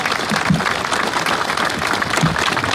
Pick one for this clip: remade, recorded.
recorded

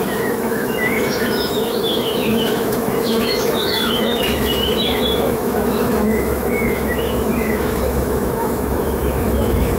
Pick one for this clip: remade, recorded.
remade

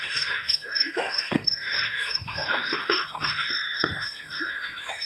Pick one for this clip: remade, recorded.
remade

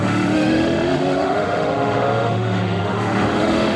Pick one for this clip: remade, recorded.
remade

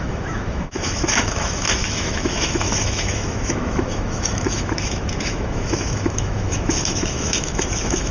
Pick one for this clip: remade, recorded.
remade